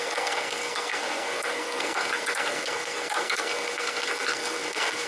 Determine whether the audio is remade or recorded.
remade